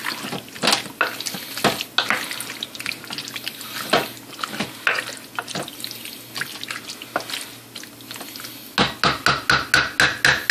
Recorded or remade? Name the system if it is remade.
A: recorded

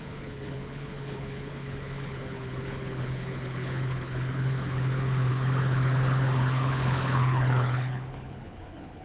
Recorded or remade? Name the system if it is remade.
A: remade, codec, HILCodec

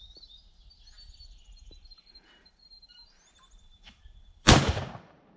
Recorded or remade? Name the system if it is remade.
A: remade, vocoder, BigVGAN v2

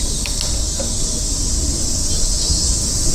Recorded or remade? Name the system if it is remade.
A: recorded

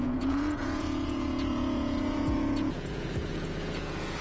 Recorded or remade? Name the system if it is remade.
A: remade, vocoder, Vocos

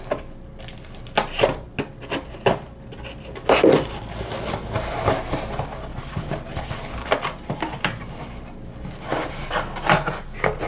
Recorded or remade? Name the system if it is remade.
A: recorded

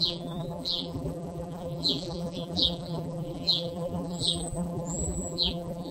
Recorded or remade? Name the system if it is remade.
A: remade, vocoder, BigVGAN v2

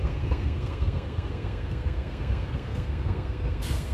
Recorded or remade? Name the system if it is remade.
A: remade, codec, SNAC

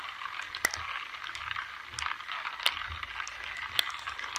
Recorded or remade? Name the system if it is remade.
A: recorded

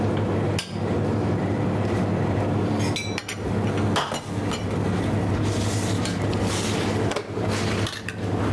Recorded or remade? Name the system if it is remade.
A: recorded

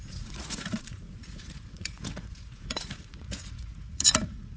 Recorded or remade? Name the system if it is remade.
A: remade, vocoder, Vocos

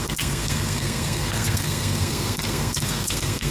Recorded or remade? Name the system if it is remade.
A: remade, codec, SNAC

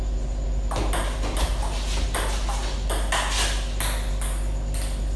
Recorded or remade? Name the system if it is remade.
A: recorded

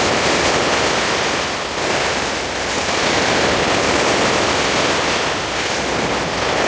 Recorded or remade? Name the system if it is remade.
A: recorded